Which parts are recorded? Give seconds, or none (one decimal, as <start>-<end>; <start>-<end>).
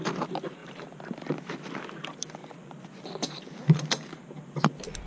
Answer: 0.0-2.4; 3.0-5.1